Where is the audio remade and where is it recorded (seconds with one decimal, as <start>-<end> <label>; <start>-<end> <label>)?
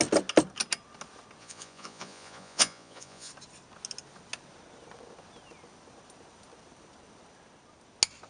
0.0-1.4 recorded; 1.4-3.3 remade; 3.3-8.3 recorded